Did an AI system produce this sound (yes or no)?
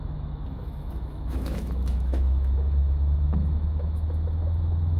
yes